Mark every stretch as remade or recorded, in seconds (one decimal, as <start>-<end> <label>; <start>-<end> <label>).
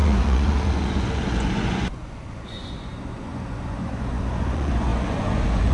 0.0-5.7 remade